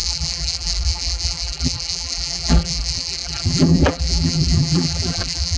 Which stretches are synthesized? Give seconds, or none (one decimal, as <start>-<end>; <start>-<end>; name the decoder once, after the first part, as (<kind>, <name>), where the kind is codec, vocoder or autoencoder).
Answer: 0.0-5.6 (vocoder, BigVGAN v2)